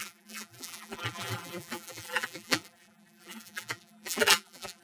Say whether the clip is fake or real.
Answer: fake